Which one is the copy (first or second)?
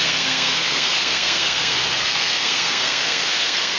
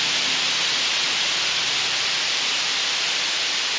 first